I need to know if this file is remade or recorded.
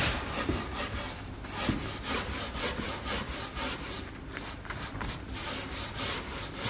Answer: recorded